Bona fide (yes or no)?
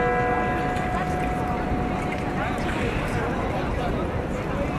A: yes